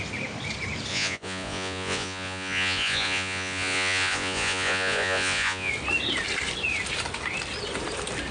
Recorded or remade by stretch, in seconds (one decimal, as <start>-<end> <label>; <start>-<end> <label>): 0.0-0.9 recorded; 0.9-5.7 remade; 5.7-8.3 recorded